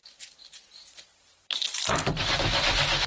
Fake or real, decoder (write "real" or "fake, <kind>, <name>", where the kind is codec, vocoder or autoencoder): real